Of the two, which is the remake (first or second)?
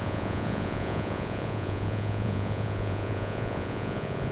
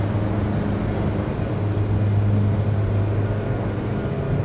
first